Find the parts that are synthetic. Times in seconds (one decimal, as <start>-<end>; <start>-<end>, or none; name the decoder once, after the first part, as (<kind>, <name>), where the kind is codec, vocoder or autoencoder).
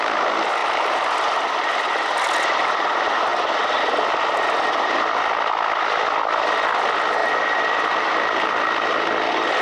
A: 0.6-1.4 (vocoder, BigVGAN v2); 7.2-7.9